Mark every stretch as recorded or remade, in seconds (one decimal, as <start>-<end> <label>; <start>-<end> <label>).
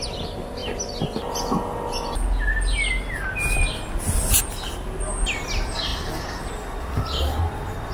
0.0-7.9 recorded